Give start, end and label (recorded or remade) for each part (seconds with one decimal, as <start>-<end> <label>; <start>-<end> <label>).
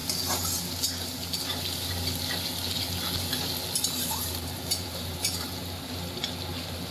0.0-4.1 recorded; 4.1-5.6 remade; 5.6-6.5 recorded; 6.5-6.9 remade